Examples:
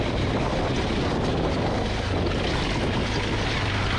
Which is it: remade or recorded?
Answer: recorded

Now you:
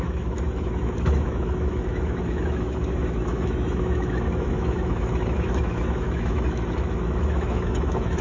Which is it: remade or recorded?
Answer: remade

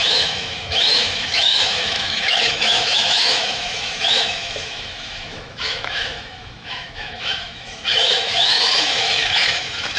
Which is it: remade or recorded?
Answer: remade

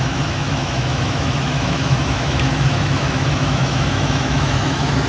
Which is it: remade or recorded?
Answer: remade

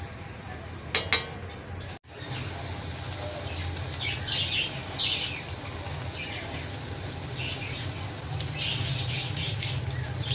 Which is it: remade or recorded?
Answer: recorded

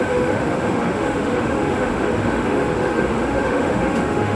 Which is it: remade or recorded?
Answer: remade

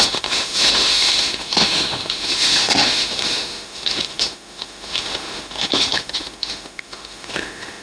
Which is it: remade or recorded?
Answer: remade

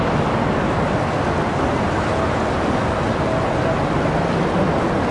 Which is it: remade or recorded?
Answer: recorded